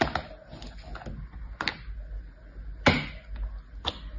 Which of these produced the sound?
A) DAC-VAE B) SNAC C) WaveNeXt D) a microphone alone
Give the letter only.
D